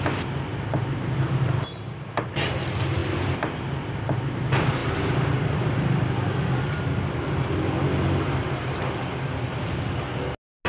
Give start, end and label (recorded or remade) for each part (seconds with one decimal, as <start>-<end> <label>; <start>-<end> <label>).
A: 0.0-10.7 recorded